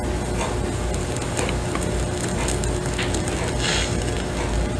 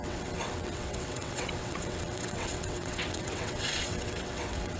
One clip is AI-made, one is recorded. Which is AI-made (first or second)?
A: second